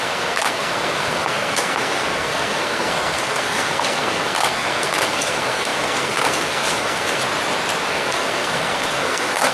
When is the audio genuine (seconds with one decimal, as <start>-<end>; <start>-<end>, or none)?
7.2-7.9